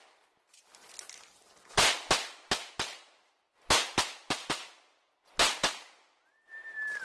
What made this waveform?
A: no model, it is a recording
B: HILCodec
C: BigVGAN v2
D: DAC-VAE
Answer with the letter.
A